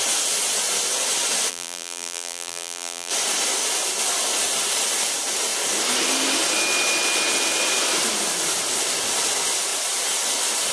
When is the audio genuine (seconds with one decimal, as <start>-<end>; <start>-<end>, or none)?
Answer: 0.0-1.5; 3.1-10.7

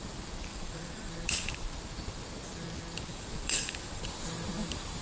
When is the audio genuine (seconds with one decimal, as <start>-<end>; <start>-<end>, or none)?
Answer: 0.0-0.5; 1.1-3.1; 4.0-5.0

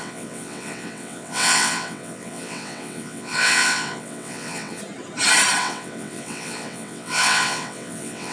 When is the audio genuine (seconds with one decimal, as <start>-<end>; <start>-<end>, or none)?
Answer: 4.8-5.6

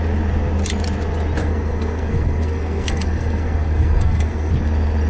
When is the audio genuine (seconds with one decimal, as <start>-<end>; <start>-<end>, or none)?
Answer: 0.0-1.4; 4.5-5.1

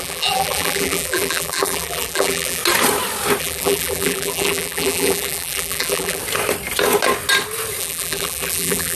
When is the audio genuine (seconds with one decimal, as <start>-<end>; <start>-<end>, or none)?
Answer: 2.6-3.4; 6.2-7.8